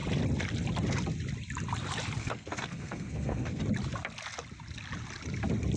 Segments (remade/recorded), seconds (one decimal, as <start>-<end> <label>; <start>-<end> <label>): 0.0-2.2 recorded; 2.2-3.6 remade; 3.6-5.8 recorded